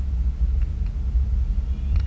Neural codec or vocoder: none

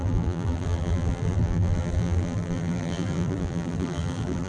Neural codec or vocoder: vocoder, BigVGAN v2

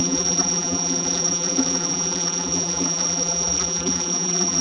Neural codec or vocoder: vocoder, BigVGAN v2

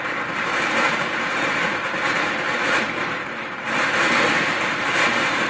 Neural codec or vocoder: vocoder, BigVGAN v2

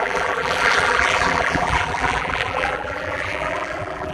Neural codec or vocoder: vocoder, BigVGAN v2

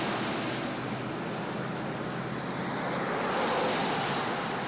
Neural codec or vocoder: none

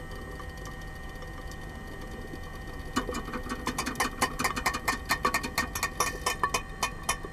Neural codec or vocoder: none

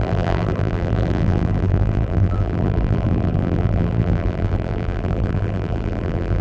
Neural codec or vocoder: vocoder, BigVGAN v2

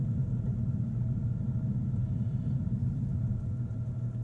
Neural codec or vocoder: vocoder, BigVGAN v2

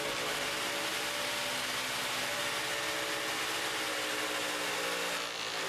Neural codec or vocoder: none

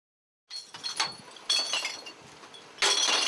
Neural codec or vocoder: none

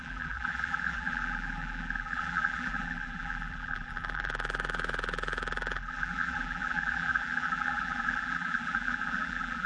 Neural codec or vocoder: vocoder, BigVGAN v2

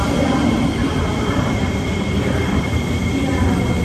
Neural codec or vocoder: vocoder, BigVGAN v2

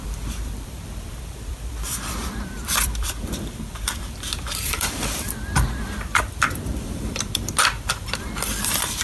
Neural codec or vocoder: vocoder, BigVGAN v2